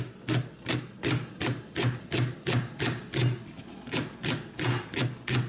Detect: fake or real real